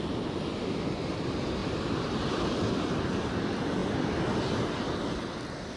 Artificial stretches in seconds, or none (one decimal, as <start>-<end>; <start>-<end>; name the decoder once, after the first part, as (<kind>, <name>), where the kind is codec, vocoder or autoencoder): none